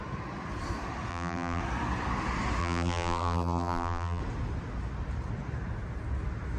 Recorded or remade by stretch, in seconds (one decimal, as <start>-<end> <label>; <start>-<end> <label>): 0.0-1.1 recorded; 1.1-1.6 remade; 1.6-2.6 recorded; 2.6-4.2 remade; 4.2-6.6 recorded